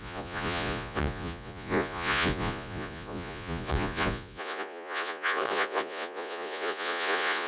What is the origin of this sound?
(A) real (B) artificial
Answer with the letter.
B